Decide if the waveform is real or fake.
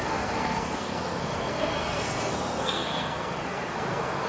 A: fake